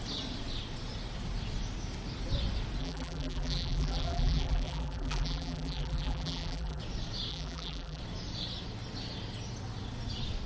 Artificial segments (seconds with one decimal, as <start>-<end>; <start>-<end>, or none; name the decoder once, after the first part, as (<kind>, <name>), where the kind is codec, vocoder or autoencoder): 2.8-6.8 (vocoder, BigVGAN v2); 7.3-8.0